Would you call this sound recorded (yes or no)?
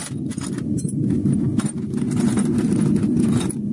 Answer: yes